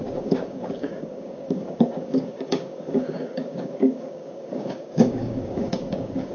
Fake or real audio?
fake